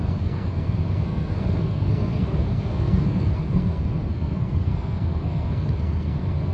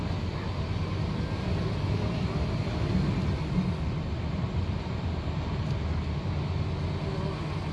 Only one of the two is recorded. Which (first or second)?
second